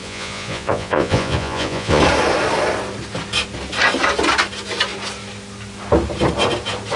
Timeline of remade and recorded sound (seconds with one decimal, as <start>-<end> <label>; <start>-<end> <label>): 0.0-2.0 remade; 2.0-7.0 recorded